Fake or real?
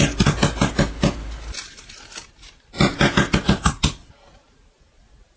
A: real